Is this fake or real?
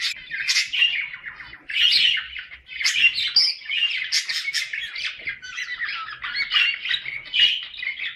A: real